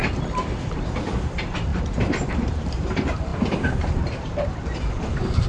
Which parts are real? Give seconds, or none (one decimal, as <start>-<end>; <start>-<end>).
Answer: 0.0-0.8